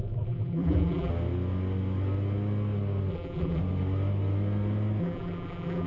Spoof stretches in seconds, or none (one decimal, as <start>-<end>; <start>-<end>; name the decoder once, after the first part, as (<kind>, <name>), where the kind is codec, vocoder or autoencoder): 0.0-1.1 (vocoder, BigVGAN v2); 3.1-3.6; 5.0-5.9